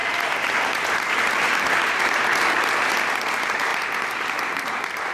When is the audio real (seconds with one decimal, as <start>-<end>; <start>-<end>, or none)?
0.0-3.7